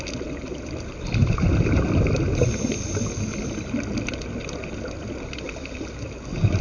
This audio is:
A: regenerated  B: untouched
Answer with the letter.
B